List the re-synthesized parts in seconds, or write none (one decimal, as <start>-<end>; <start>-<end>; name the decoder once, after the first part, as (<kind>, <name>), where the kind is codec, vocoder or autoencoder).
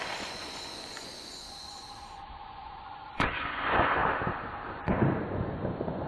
0.0-4.0 (vocoder, Vocos); 4.7-6.1